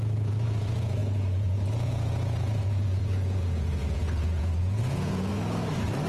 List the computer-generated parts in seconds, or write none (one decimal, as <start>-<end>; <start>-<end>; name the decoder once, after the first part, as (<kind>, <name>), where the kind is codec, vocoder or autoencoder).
0.0-5.3 (vocoder, Vocos)